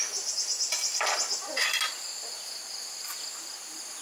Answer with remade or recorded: recorded